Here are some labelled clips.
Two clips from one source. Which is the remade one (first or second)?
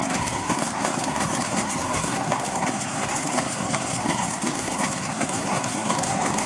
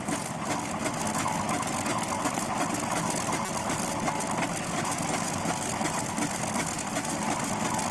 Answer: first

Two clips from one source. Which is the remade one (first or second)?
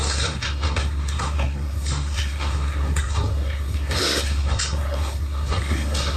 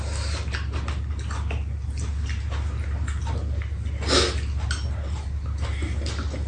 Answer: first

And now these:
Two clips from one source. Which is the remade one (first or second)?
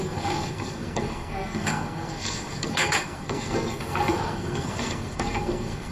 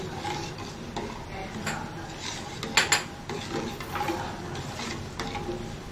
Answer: first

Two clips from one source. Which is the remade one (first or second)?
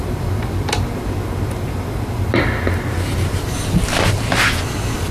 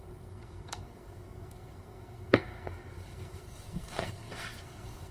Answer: second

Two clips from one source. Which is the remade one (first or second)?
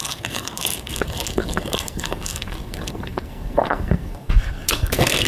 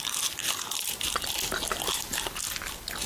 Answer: first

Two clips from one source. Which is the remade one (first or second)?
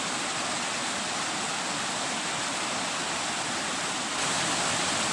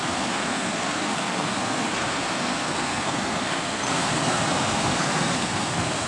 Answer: second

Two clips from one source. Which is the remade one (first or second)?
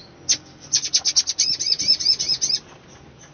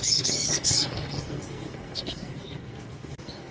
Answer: second